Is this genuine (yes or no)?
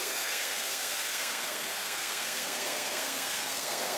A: no